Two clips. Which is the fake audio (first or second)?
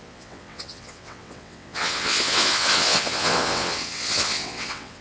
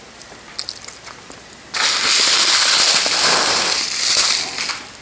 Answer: first